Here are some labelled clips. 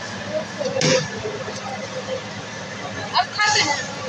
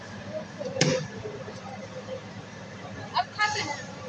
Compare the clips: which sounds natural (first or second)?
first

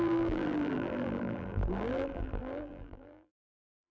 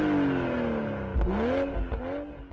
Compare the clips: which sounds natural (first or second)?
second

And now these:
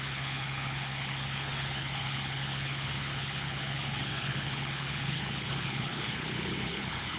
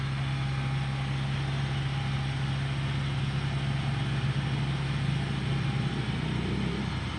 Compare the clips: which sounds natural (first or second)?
second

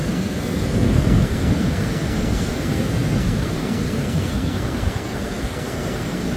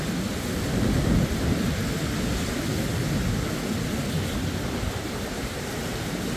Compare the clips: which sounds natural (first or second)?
second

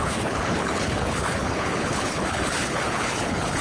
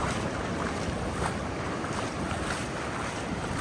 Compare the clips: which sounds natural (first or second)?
second